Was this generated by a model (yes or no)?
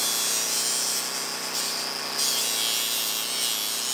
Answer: no